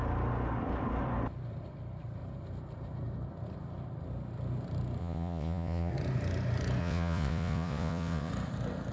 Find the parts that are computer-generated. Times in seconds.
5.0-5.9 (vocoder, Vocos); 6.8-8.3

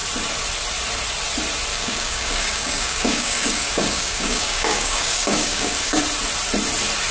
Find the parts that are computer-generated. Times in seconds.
1.7-6.0 (codec, DAC)

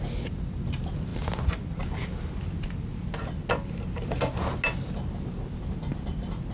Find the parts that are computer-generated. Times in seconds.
none

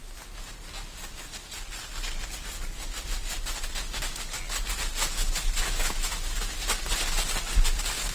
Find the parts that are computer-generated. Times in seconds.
5.6-6.5 (autoencoder, DAC-VAE)

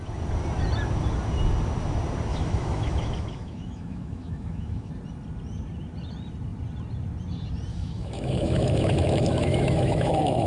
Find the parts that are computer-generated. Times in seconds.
2.3-4.9 (autoencoder, DAC-VAE); 7.7-10.5